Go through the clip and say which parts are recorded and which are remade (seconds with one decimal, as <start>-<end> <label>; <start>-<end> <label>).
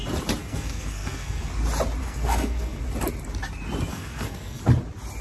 0.0-0.4 recorded; 0.4-1.5 remade; 1.5-2.0 recorded; 2.0-2.8 remade; 2.8-3.9 recorded; 3.9-4.6 remade; 4.6-5.2 recorded